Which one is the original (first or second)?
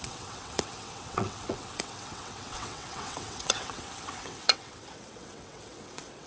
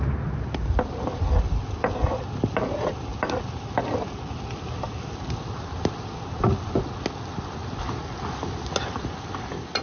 second